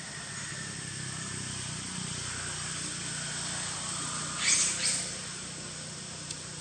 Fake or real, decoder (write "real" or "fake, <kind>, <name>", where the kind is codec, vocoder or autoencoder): real